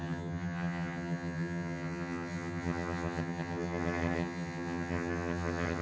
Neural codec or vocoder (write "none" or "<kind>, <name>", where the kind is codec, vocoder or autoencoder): vocoder, HiFi-GAN